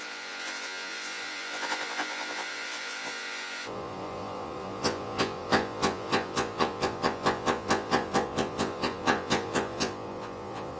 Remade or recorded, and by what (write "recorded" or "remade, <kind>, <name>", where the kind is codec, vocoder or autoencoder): remade, vocoder, Vocos